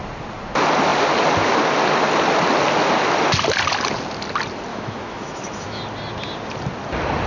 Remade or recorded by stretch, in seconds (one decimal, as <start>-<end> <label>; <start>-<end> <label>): 0.0-4.7 recorded; 4.7-5.8 remade; 5.8-7.3 recorded